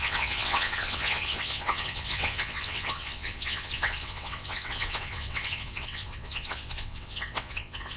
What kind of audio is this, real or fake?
fake